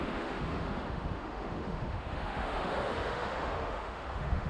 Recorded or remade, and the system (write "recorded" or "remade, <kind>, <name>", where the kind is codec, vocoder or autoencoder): remade, autoencoder, DAC-VAE